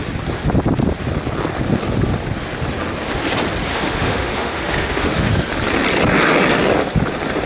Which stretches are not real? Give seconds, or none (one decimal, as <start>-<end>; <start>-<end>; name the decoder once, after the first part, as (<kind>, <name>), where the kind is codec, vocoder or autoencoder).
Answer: 3.7-5.3 (autoencoder, DAC-VAE)